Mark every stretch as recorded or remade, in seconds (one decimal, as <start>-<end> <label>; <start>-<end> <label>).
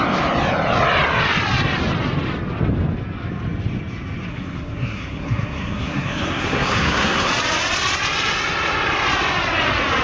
0.0-4.3 recorded; 4.3-7.3 remade; 7.3-10.0 recorded